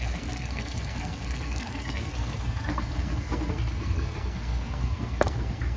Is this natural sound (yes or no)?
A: no